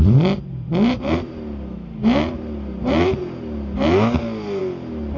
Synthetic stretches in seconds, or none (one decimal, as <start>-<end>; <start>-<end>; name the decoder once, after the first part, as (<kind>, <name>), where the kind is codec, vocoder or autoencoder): none